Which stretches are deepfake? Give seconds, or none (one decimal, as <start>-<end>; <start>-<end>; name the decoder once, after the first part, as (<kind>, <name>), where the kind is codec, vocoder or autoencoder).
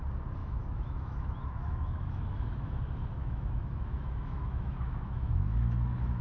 0.4-2.8 (autoencoder, DAC-VAE); 3.2-6.2